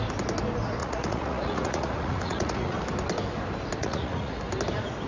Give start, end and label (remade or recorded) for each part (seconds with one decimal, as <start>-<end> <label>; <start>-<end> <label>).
0.0-0.8 recorded; 0.8-2.8 remade; 2.8-3.8 recorded; 3.8-4.4 remade; 4.4-5.1 recorded